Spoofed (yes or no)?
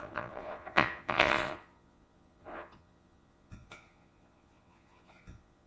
yes